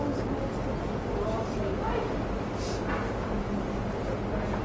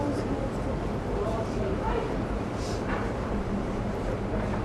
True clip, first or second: first